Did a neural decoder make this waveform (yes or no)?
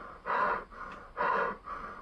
no